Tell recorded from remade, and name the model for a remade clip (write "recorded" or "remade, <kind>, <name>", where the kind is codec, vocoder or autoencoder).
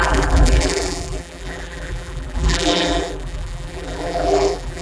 remade, vocoder, BigVGAN v2